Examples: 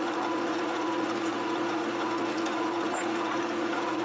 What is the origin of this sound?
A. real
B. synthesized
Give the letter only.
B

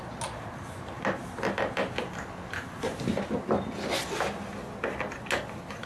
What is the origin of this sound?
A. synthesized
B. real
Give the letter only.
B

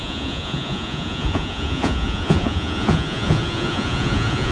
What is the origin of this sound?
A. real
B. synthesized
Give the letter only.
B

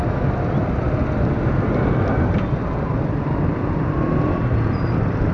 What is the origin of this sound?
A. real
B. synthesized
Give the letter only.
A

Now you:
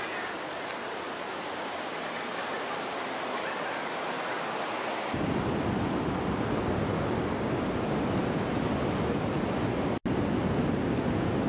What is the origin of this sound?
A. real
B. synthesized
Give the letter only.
A